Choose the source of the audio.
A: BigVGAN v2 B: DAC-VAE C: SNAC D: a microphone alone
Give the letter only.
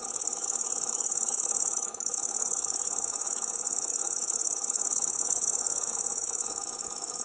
B